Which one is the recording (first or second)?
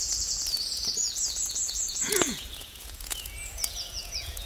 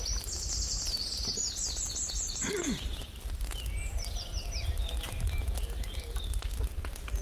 second